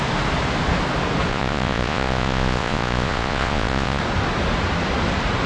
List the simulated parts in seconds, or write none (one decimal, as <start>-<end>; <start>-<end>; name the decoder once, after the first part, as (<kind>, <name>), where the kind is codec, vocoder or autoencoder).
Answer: 1.3-4.0 (vocoder, Vocos)